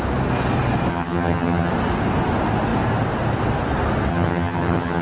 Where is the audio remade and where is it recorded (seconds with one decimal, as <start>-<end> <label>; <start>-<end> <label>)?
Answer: 0.0-0.9 recorded; 0.9-1.7 remade; 1.7-4.1 recorded; 4.1-5.0 remade